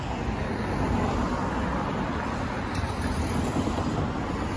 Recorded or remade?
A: recorded